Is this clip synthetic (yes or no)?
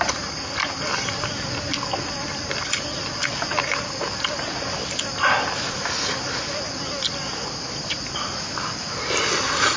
no